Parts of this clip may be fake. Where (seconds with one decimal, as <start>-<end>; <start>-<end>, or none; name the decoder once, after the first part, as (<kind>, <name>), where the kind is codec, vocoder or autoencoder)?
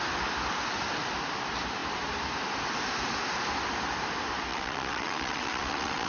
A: 4.5-6.1 (vocoder, WaveNeXt)